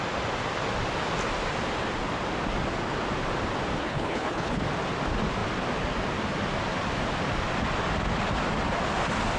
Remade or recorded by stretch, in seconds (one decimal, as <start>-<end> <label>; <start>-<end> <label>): 0.0-3.8 recorded; 3.8-4.6 remade; 4.6-9.4 recorded